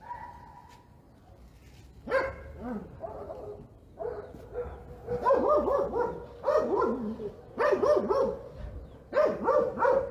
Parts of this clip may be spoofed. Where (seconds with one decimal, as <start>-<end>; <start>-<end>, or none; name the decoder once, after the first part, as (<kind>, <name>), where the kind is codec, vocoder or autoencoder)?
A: 2.8-4.8 (vocoder, BigVGAN v2)